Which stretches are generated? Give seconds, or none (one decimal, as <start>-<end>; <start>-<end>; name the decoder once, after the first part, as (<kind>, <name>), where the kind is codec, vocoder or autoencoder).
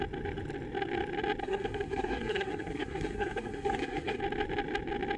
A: 1.4-4.2 (codec, SNAC)